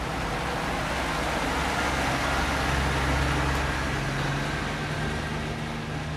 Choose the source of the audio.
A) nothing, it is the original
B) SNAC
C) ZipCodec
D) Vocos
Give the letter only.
A